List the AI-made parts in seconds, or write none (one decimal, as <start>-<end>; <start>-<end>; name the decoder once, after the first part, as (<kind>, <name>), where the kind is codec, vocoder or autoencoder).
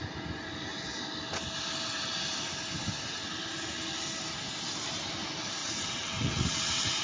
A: 5.6-7.0 (vocoder, WaveNeXt)